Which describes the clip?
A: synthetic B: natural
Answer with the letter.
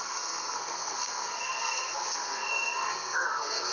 A